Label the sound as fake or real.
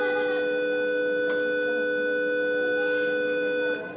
real